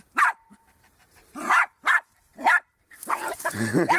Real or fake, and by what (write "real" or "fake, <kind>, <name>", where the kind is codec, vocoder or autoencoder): fake, vocoder, BigVGAN v2